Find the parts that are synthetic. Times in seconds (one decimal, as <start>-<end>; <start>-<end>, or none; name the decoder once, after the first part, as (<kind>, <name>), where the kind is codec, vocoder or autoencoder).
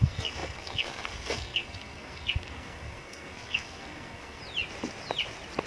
0.0-4.4 (codec, SNAC)